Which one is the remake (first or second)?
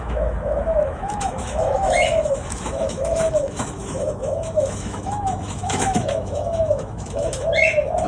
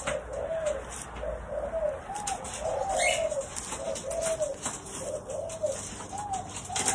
first